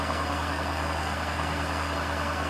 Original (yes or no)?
no